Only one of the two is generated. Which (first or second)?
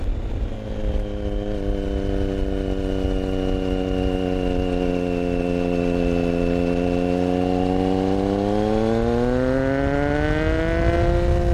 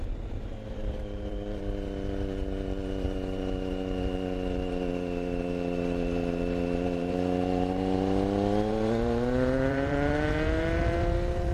second